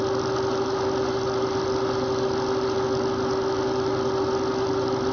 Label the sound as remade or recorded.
recorded